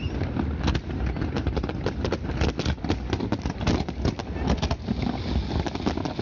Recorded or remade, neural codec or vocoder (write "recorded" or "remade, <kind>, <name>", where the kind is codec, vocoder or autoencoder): recorded